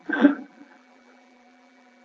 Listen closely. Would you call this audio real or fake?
fake